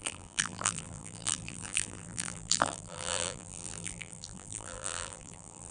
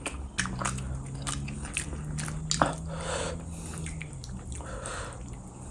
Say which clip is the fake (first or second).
first